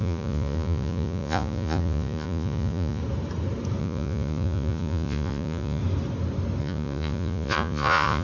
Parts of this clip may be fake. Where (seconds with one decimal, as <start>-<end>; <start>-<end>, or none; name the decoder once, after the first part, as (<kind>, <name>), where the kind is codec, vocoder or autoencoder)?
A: 0.0-3.0 (vocoder, Vocos); 3.8-5.8; 6.6-8.2